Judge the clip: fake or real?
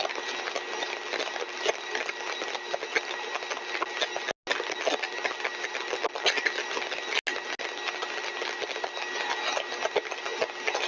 real